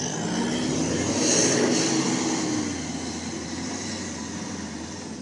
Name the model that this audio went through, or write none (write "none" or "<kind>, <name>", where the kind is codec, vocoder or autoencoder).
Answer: none